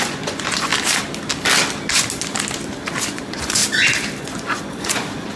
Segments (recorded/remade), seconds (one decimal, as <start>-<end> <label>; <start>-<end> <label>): 0.0-0.7 remade; 0.7-3.1 recorded; 3.1-3.6 remade; 3.6-4.2 recorded; 4.2-5.4 remade